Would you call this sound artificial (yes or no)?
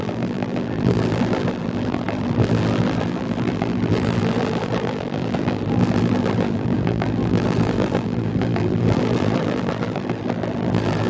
yes